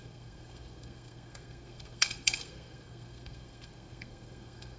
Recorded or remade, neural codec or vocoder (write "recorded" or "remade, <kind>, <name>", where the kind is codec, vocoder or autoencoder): remade, codec, SNAC